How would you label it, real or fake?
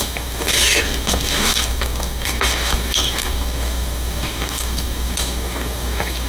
fake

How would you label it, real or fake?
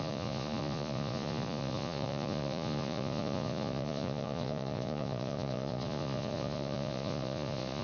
fake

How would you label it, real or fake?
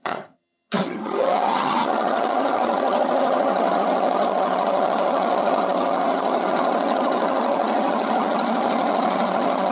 fake